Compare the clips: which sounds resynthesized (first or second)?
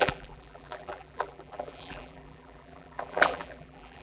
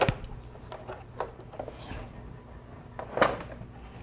first